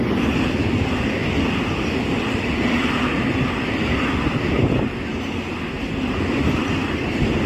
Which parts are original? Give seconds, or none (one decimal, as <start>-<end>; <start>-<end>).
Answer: 0.0-7.5